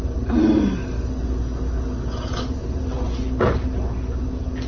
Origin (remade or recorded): recorded